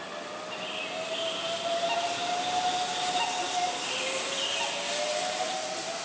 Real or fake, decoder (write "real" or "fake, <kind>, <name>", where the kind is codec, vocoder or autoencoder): real